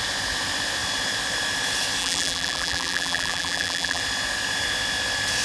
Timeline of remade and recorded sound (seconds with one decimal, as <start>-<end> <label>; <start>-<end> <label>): 0.0-2.0 recorded; 2.0-4.0 remade; 4.0-5.4 recorded